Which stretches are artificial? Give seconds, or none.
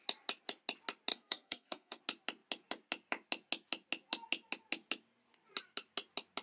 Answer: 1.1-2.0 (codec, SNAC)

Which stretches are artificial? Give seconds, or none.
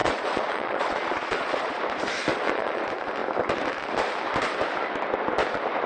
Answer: 0.0-1.8 (vocoder, Vocos); 2.3-2.8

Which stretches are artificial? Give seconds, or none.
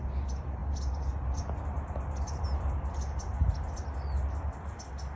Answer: none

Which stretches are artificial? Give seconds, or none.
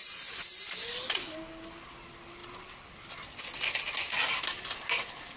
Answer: none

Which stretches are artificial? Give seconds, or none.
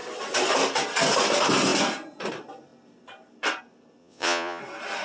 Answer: 4.0-4.6 (vocoder, Vocos)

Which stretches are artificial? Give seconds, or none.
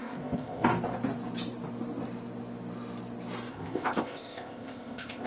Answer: 0.0-0.7 (codec, ZipCodec); 3.5-5.3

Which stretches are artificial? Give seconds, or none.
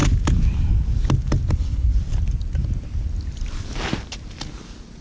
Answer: 1.5-1.9 (codec, HILCodec)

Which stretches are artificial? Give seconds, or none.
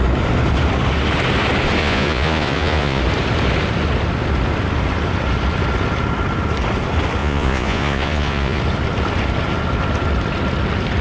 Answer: 1.8-3.0 (vocoder, Vocos); 7.2-8.6